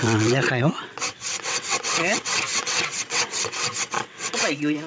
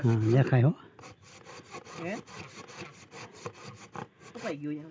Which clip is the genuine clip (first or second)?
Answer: second